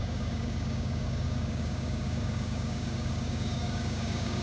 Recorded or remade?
remade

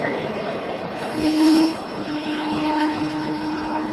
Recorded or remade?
remade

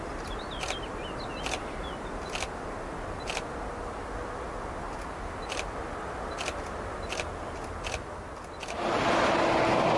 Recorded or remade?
recorded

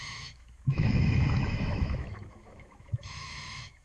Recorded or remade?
remade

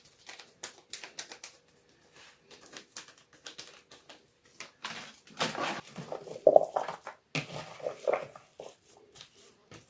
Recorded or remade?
recorded